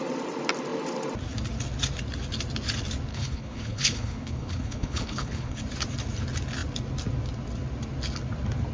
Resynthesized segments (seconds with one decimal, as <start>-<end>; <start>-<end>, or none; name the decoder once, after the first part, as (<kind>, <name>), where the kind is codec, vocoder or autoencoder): 3.1-5.6 (codec, HILCodec)